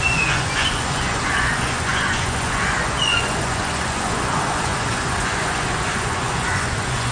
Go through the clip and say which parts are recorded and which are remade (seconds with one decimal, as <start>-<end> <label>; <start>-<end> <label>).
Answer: 0.0-7.1 remade